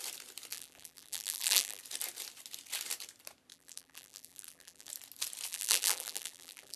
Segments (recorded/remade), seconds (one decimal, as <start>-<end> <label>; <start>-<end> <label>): 0.0-0.5 recorded; 0.5-1.8 remade; 1.8-3.5 recorded; 3.5-4.9 remade; 4.9-5.5 recorded; 5.5-6.8 remade